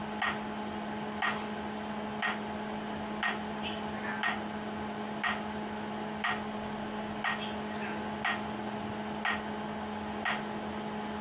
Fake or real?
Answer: real